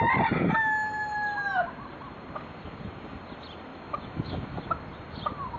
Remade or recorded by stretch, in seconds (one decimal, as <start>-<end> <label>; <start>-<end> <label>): 0.0-3.7 recorded; 3.7-4.6 remade; 4.6-5.6 recorded